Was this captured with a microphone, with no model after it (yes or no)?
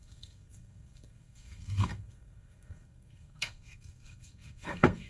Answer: no